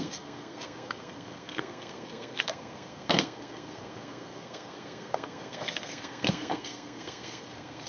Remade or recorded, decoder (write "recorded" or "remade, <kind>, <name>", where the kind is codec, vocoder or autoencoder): remade, codec, SNAC